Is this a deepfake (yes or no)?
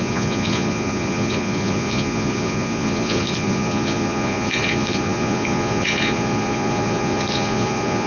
yes